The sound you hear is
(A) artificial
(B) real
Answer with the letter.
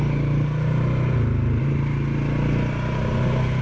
B